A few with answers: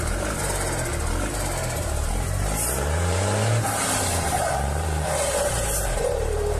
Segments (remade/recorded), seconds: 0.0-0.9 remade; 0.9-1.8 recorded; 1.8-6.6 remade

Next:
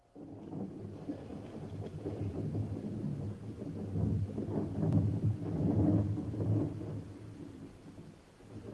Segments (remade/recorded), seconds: 0.0-1.3 recorded; 1.3-2.2 remade; 2.2-3.1 recorded; 3.1-4.1 remade; 4.1-8.7 recorded

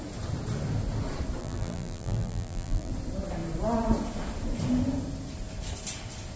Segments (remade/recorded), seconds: 0.0-1.4 recorded; 1.4-2.9 remade; 2.9-6.4 recorded

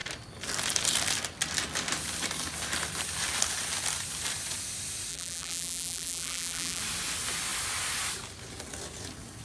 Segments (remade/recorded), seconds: 0.0-5.1 recorded; 5.1-6.8 remade; 6.8-9.4 recorded

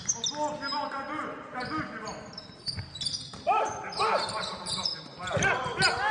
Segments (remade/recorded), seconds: 0.0-1.5 recorded; 1.5-5.2 remade; 5.2-6.1 recorded